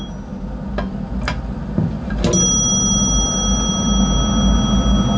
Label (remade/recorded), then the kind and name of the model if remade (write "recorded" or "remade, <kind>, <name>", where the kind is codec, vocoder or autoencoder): recorded